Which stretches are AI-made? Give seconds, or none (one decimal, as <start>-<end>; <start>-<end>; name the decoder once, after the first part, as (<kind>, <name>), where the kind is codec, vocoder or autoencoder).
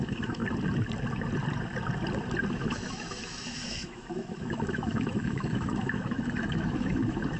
0.0-0.4 (autoencoder, DAC-VAE); 2.5-7.4